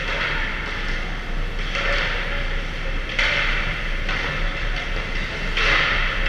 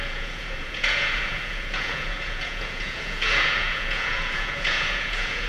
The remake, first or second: second